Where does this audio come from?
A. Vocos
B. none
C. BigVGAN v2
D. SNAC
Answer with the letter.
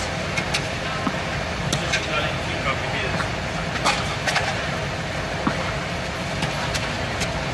B